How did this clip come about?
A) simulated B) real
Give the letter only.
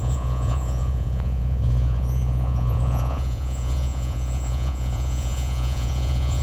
A